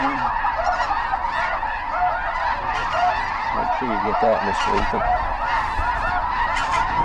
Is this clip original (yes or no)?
no